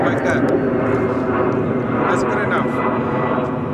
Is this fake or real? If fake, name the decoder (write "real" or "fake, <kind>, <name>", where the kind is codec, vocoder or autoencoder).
real